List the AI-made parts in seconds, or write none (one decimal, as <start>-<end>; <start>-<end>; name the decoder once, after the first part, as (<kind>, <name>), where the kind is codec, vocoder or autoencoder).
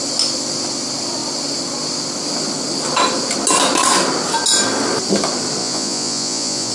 5.6-6.7 (vocoder, Vocos)